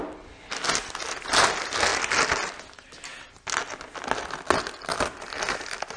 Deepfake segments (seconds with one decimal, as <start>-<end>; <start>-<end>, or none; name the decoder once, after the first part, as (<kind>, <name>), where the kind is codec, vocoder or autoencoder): none